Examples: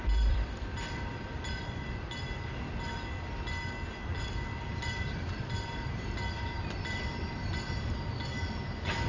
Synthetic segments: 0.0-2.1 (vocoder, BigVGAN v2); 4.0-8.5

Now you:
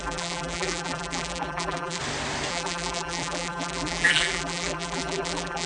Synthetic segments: 0.0-2.0 (vocoder, BigVGAN v2); 2.5-5.7